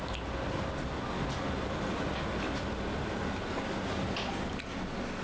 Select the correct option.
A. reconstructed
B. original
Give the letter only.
B